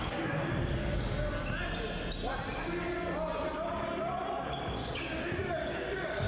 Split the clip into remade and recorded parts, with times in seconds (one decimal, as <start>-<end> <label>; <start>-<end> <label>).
0.0-0.8 remade; 0.8-4.6 recorded; 4.6-6.3 remade